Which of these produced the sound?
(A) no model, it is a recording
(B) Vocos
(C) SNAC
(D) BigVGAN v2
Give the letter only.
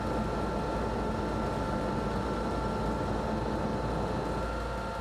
A